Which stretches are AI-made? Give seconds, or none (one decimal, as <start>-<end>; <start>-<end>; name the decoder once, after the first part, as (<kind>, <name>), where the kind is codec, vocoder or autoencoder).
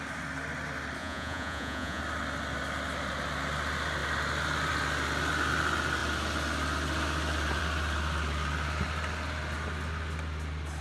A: 1.0-2.0 (vocoder, Vocos)